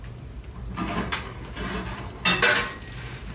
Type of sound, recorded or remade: recorded